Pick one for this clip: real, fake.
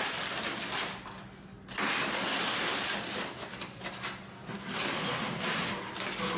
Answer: real